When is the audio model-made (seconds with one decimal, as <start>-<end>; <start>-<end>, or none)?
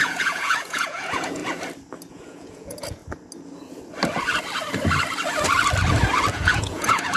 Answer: 0.0-1.4; 2.1-3.0; 6.3-7.2